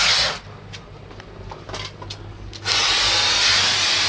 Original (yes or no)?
yes